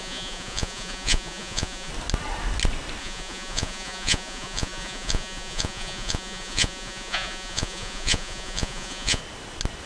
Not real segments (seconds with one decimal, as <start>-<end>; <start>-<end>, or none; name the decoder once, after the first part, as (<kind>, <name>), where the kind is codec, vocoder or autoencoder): 0.0-1.9 (vocoder, Vocos); 3.0-9.2

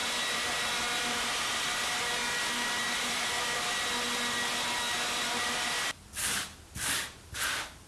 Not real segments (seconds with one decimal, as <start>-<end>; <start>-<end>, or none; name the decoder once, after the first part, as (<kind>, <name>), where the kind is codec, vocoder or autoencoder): none

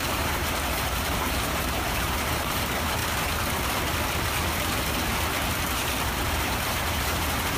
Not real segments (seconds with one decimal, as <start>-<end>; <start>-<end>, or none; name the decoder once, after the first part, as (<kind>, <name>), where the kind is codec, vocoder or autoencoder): 0.0-3.0 (vocoder, BigVGAN v2); 6.4-7.6